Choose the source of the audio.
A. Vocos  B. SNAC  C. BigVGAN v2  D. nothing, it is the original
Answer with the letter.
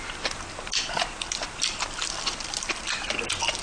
D